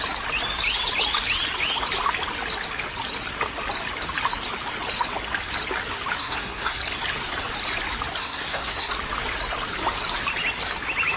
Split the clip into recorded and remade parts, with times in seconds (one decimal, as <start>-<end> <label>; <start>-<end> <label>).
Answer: 0.0-6.2 recorded; 6.2-6.8 remade; 6.8-8.2 recorded; 8.2-8.9 remade; 8.9-11.2 recorded